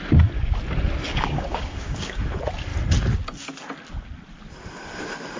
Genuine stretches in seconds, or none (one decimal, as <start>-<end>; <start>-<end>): 0.0-1.1; 2.3-5.4